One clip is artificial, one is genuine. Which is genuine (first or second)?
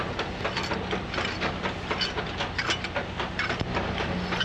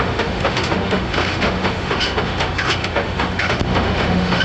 first